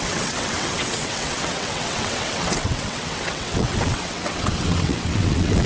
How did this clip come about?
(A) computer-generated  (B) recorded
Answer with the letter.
A